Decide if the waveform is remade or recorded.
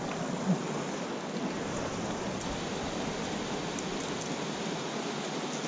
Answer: recorded